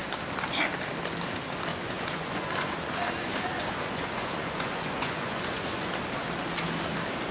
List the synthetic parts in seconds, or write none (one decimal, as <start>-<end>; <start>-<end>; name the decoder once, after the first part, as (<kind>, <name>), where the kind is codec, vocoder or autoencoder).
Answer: 1.7-5.9 (vocoder, Vocos)